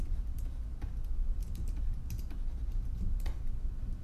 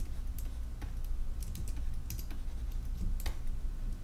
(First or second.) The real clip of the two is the second